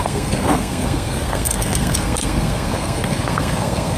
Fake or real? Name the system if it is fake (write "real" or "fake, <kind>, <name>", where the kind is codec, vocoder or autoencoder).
fake, codec, SNAC